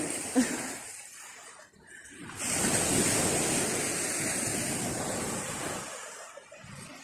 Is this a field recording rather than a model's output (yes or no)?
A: yes